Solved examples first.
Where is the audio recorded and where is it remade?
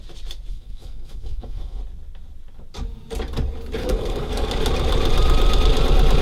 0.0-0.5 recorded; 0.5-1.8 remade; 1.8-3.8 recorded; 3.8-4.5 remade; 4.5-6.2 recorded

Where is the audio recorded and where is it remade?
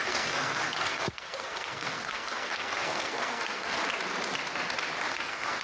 0.0-3.8 remade; 3.8-5.1 recorded; 5.1-5.6 remade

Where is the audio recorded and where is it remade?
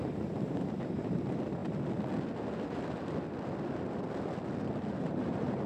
0.0-1.6 remade; 1.6-5.0 recorded; 5.0-5.7 remade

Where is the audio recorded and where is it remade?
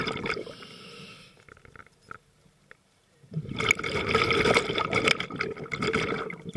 0.0-6.6 recorded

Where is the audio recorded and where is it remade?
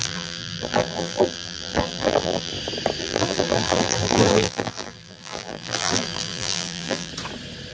0.0-2.5 remade; 2.5-3.0 recorded; 3.0-7.1 remade; 7.1-7.7 recorded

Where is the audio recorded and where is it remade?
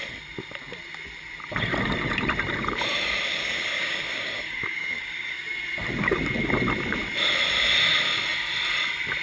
0.0-3.3 recorded; 3.3-5.4 remade; 5.4-9.2 recorded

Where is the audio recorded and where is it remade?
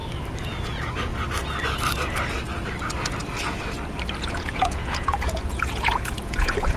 0.0-0.6 recorded; 0.6-1.1 remade; 1.1-4.2 recorded; 4.2-6.8 remade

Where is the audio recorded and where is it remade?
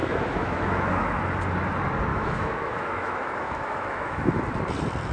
0.0-1.2 remade; 1.2-2.1 recorded; 2.1-4.4 remade; 4.4-5.1 recorded